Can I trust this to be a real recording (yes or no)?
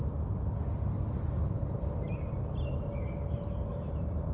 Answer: yes